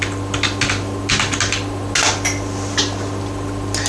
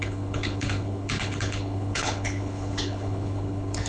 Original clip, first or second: first